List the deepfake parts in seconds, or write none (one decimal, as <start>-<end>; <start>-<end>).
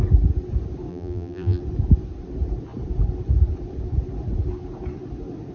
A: 0.9-1.6